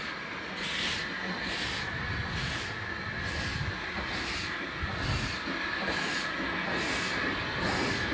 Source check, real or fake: real